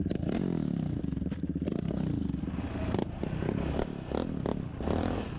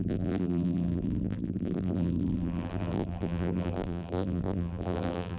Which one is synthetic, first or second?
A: second